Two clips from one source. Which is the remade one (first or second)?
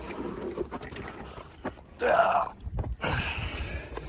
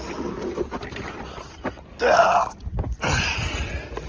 first